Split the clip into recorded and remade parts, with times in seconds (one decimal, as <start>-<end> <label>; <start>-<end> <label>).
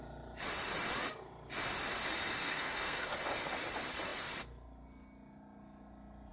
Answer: 0.0-2.4 recorded; 2.4-3.0 remade; 3.0-6.3 recorded